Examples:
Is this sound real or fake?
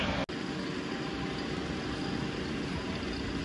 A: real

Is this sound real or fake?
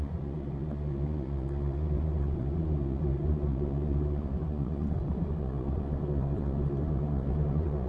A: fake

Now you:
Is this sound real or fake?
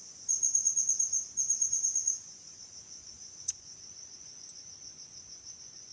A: fake